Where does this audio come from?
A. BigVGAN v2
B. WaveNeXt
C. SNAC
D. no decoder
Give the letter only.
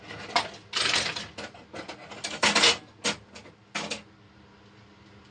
D